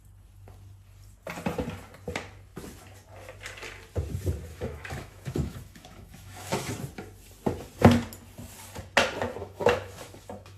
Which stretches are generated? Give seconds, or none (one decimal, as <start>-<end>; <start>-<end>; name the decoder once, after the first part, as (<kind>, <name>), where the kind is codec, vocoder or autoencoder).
4.5-6.7 (autoencoder, DAC-VAE); 9.4-10.6